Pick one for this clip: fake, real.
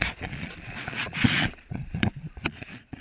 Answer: fake